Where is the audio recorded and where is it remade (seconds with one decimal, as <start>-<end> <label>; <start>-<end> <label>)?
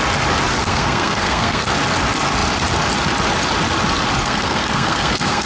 0.0-0.6 recorded; 0.6-1.7 remade; 1.7-4.2 recorded; 4.2-5.5 remade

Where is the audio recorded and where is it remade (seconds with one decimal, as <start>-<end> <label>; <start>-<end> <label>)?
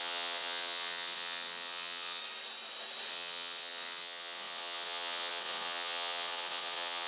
0.0-2.2 remade; 2.2-3.1 recorded; 3.1-7.1 remade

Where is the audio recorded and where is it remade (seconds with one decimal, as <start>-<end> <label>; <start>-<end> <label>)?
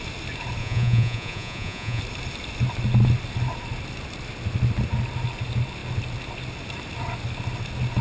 0.0-0.6 recorded; 0.6-2.0 remade; 2.0-8.0 recorded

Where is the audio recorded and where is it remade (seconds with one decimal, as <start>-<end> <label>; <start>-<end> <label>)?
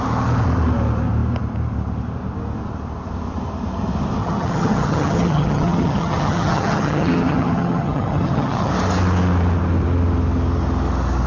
0.0-4.2 recorded; 4.2-8.7 remade; 8.7-11.3 recorded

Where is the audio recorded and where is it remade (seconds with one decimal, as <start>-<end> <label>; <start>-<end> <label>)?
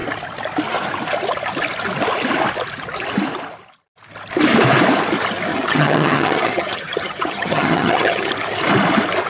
0.0-5.5 recorded; 5.5-8.3 remade; 8.3-9.3 recorded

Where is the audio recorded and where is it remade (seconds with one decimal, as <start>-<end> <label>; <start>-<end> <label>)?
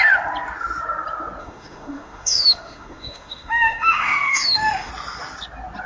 0.0-1.4 recorded; 1.4-4.9 remade; 4.9-5.9 recorded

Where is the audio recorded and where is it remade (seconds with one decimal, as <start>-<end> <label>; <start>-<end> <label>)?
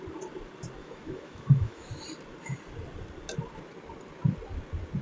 0.0-0.8 recorded; 0.8-2.0 remade; 2.0-5.0 recorded